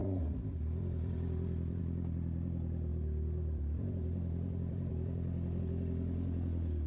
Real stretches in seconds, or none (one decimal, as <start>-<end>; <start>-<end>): 1.8-2.9; 5.6-6.9